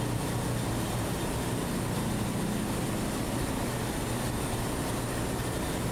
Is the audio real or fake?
real